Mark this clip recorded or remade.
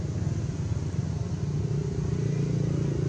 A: recorded